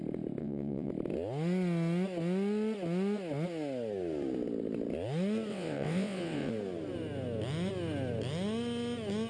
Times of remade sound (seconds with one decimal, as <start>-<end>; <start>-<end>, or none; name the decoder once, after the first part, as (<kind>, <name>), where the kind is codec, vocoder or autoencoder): 0.4-0.9 (vocoder, WaveNeXt); 5.5-6.5